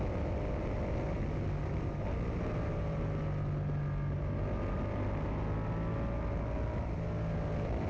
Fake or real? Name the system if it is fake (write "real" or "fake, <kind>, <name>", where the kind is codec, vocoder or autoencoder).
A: real